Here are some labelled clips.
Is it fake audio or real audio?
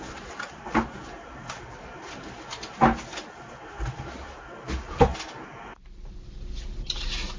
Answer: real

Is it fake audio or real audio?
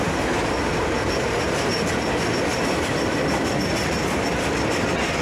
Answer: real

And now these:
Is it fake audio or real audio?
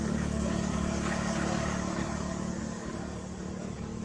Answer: fake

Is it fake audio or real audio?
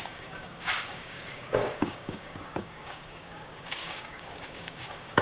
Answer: fake